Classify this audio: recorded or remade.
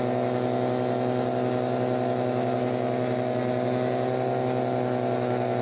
recorded